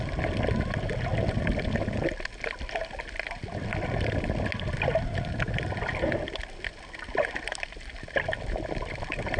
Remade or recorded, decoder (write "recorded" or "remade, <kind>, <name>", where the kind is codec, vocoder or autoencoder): recorded